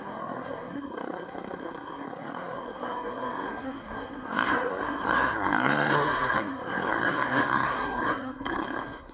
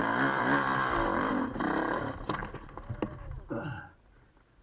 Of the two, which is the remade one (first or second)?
first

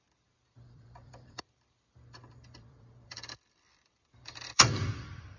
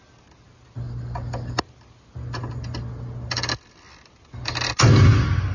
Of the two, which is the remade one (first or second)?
first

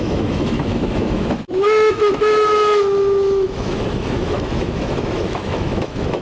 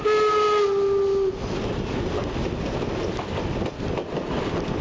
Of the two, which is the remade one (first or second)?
first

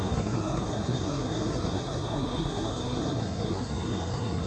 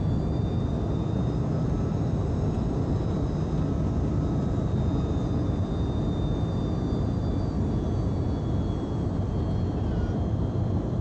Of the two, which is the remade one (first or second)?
first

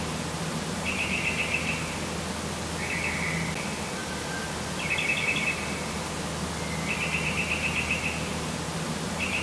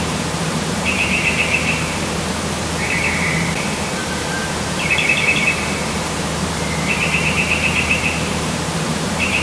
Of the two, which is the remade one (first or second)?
second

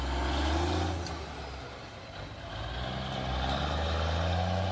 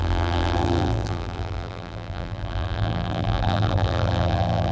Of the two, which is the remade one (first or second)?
second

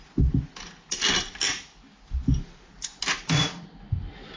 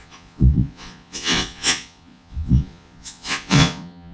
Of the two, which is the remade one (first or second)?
second